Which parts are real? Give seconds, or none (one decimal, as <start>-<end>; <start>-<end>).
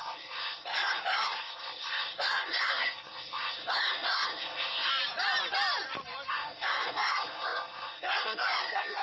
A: 4.9-6.3